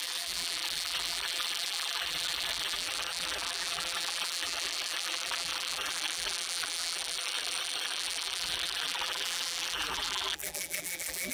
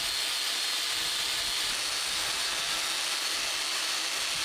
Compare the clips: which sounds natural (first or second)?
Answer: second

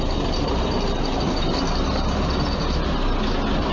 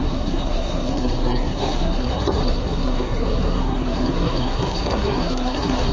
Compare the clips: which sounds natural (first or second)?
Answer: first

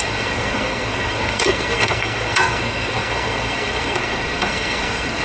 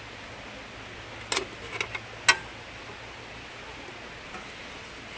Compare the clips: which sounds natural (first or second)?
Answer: second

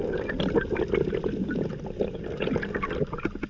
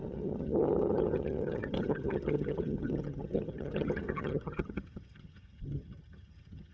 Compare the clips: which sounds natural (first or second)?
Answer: first